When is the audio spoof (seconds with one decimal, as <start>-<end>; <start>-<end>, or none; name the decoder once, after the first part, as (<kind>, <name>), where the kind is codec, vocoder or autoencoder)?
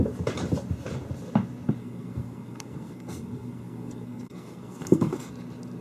1.8-5.3 (codec, SNAC)